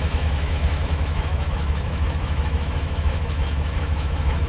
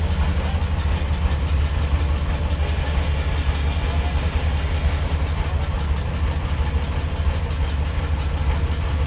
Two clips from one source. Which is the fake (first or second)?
first